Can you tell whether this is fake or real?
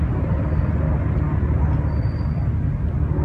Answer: real